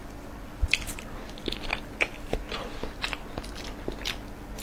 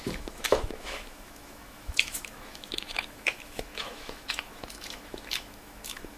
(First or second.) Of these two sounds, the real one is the first